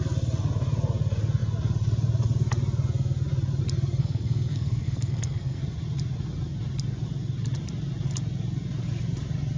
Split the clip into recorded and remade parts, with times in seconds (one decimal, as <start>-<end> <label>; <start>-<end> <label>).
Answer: 0.0-4.0 recorded; 4.0-5.6 remade; 5.6-9.6 recorded